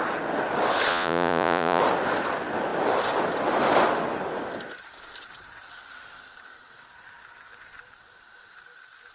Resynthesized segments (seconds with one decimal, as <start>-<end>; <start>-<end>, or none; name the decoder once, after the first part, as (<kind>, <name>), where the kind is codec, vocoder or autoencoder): 0.9-1.8 (vocoder, Vocos)